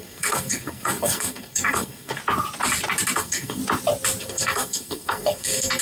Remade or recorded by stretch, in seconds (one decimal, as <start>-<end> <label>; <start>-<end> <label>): 0.0-2.2 remade; 2.2-3.2 recorded; 3.2-3.6 remade; 3.6-4.2 recorded; 4.2-5.8 remade